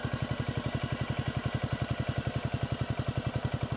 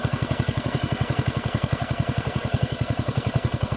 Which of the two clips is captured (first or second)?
first